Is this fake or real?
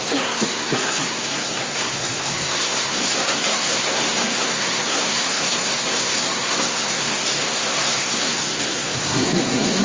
fake